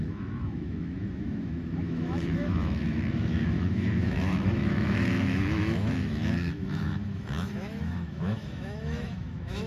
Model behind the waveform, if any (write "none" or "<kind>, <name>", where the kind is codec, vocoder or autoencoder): autoencoder, DAC-VAE